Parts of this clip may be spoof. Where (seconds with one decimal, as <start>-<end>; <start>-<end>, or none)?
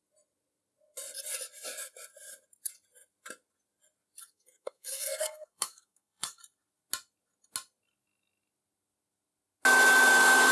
4.2-6.4